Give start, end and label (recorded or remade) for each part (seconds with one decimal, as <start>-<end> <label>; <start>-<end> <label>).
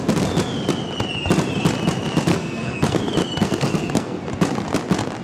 0.0-2.3 recorded; 2.3-3.0 remade; 3.0-3.4 recorded; 3.4-4.2 remade; 4.2-5.2 recorded